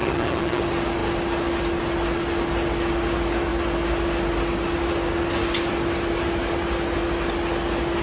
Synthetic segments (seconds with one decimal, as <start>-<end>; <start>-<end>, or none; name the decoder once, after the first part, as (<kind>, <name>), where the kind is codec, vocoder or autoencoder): 0.0-0.6 (vocoder, HiFi-GAN)